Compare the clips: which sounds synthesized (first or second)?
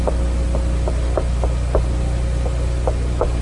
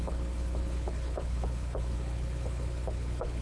second